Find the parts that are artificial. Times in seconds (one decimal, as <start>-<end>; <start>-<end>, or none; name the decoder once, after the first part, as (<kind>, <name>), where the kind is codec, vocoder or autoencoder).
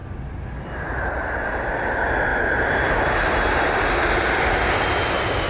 none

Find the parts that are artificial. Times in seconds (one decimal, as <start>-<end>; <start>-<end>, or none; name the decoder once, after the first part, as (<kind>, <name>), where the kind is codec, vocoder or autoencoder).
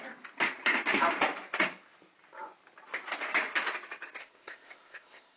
4.2-5.4 (codec, ZipCodec)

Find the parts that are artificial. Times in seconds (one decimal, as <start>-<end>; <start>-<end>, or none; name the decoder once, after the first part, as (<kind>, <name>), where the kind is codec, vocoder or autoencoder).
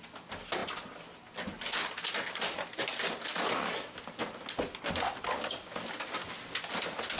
none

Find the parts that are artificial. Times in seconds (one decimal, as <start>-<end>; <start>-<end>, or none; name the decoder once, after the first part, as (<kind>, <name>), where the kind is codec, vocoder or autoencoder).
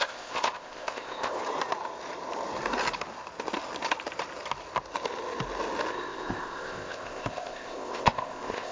0.0-1.4 (codec, ZipCodec); 5.9-8.7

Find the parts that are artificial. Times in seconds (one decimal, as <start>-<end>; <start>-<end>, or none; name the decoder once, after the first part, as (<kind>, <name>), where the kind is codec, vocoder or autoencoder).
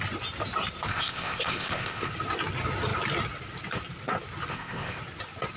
0.9-2.1 (codec, ZipCodec); 4.5-5.0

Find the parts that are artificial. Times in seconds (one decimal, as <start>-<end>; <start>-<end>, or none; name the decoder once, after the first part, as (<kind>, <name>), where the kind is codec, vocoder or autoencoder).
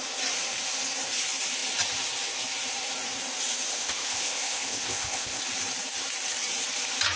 3.7-5.4 (codec, ZipCodec)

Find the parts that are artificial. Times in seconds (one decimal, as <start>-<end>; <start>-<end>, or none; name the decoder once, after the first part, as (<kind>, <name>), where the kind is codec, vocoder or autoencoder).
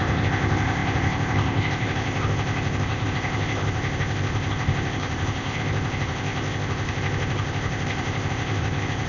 0.0-9.1 (codec, ZipCodec)